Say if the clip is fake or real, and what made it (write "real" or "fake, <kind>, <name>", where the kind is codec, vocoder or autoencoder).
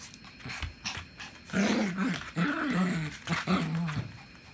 real